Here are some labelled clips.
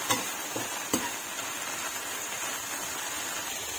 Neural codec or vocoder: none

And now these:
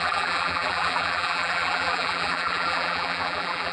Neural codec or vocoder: vocoder, BigVGAN v2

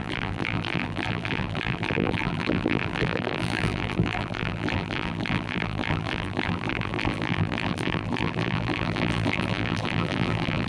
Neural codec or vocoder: vocoder, BigVGAN v2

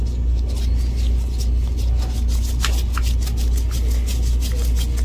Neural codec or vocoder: none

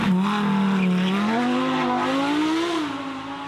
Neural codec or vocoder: none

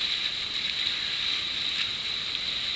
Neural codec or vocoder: none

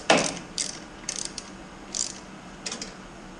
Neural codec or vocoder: vocoder, BigVGAN v2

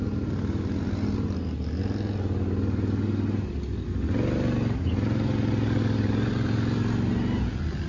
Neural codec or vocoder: none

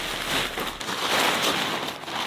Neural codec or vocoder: none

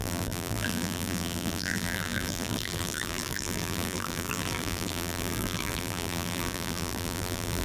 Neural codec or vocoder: vocoder, BigVGAN v2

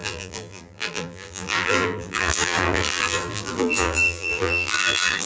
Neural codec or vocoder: vocoder, BigVGAN v2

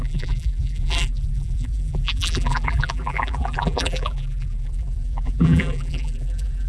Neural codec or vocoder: vocoder, BigVGAN v2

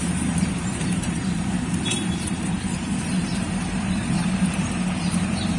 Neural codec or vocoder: vocoder, BigVGAN v2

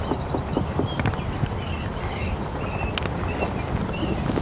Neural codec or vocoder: none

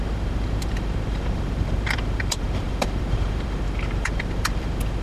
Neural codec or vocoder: vocoder, BigVGAN v2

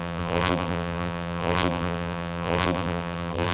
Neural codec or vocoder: vocoder, BigVGAN v2